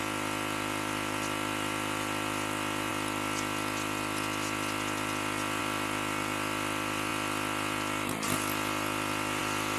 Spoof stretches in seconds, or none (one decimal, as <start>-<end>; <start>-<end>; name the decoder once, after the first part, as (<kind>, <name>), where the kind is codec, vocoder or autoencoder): none